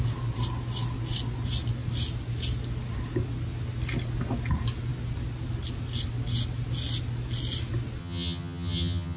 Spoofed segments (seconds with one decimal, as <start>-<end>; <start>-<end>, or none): 8.0-9.2